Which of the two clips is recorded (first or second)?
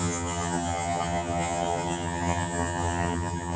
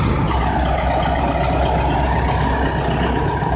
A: second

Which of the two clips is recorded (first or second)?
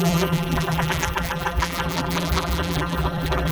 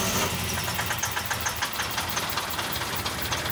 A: second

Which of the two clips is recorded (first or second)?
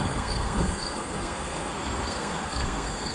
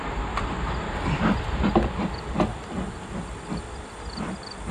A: second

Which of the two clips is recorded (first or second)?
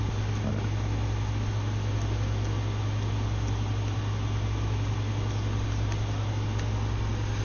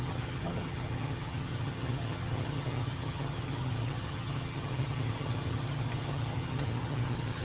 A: first